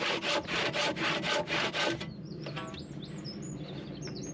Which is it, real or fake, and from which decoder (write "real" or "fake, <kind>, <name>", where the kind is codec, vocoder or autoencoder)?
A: real